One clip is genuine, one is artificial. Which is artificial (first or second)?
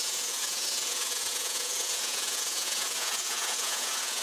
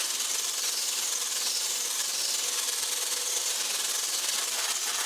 first